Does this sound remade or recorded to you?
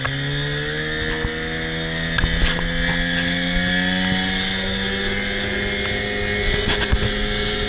recorded